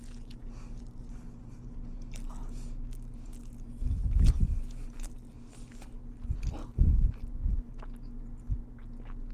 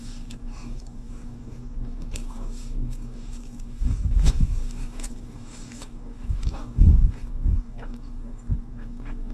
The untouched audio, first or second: first